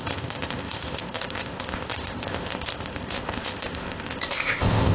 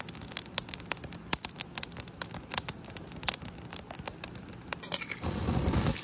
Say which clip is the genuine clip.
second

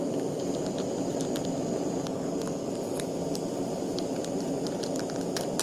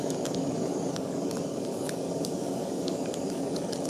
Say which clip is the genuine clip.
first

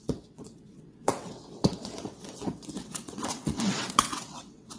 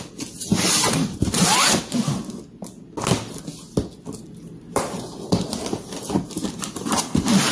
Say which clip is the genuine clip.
second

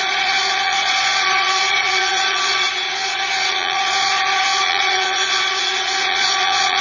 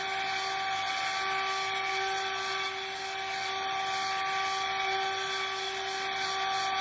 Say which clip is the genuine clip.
second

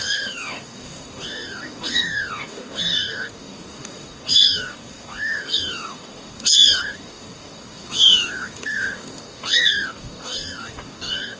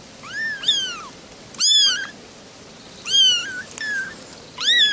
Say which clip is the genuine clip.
second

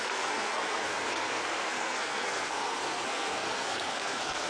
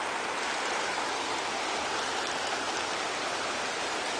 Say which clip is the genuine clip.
second